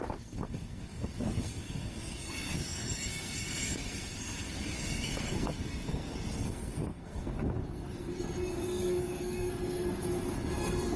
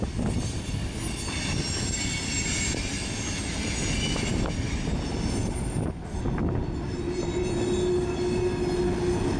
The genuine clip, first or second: second